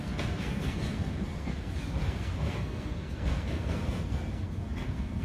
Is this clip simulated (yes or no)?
yes